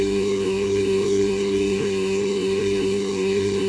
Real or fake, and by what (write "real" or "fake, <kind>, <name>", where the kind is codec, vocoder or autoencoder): fake, codec, SNAC